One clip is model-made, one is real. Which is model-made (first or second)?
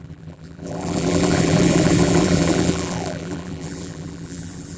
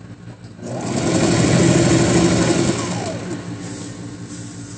first